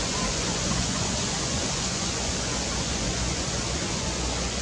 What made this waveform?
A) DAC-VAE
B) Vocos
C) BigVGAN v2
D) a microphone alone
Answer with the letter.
B